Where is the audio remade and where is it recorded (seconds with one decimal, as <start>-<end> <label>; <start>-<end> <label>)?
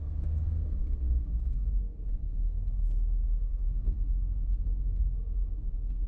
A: 0.0-6.1 remade